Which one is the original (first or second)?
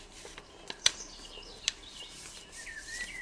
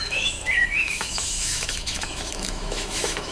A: first